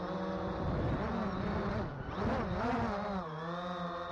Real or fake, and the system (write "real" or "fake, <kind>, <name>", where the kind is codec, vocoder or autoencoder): real